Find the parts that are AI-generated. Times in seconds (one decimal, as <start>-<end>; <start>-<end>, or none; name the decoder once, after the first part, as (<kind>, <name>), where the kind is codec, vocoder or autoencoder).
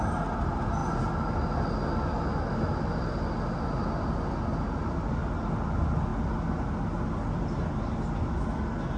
none